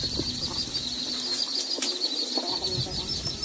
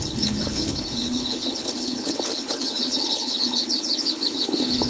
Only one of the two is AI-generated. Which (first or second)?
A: second